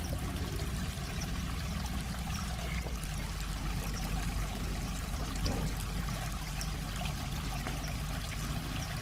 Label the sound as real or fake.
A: real